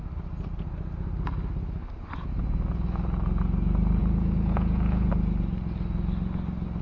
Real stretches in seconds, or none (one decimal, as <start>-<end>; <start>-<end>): 0.0-4.0; 5.1-6.8